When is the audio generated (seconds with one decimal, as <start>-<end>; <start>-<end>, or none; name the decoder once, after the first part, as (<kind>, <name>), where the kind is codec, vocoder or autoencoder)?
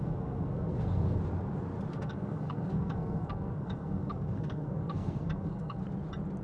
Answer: 0.0-1.2 (codec, SNAC); 1.9-5.8